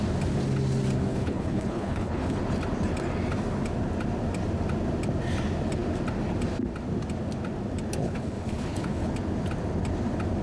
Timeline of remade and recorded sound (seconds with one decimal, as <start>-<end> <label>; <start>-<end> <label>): 0.0-1.1 recorded; 1.1-2.4 remade; 2.4-8.0 recorded; 8.0-9.1 remade; 9.1-10.4 recorded